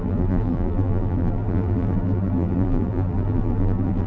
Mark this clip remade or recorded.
remade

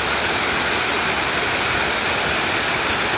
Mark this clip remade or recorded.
recorded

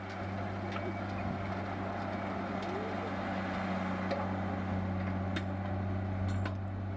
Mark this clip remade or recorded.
recorded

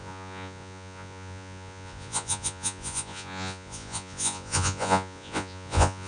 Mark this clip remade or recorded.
remade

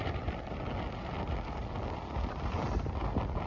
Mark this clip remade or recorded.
recorded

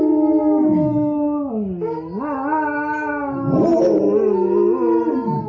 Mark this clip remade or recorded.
recorded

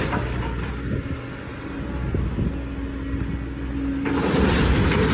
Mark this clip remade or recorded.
recorded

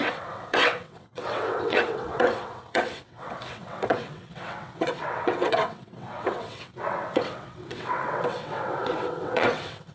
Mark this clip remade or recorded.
remade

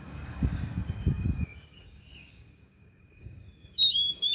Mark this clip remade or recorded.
remade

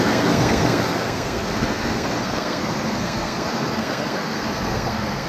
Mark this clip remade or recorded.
remade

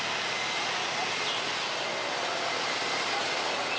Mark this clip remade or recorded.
recorded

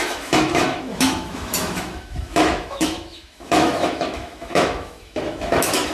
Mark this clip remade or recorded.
remade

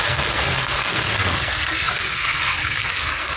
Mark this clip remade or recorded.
remade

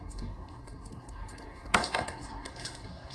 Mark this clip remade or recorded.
remade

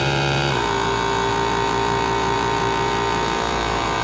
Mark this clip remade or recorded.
remade